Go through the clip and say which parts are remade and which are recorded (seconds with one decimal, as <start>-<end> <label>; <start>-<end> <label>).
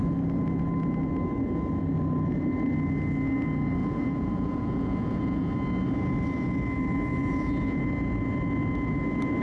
0.0-3.8 recorded; 3.8-5.5 remade; 5.5-7.2 recorded; 7.2-7.8 remade; 7.8-9.4 recorded